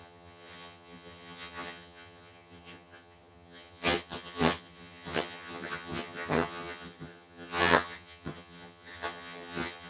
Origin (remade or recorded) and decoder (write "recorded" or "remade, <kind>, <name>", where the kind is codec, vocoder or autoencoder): remade, vocoder, HiFi-GAN